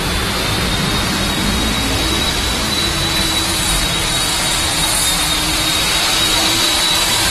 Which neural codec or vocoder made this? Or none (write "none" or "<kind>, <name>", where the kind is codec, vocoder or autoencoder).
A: vocoder, BigVGAN v2